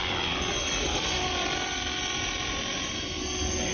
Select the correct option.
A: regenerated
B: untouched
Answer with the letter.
B